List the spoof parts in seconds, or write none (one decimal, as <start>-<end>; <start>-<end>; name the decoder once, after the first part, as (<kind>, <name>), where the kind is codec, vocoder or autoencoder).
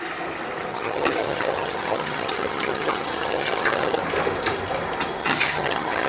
0.7-4.0 (vocoder, HiFi-GAN); 5.2-6.1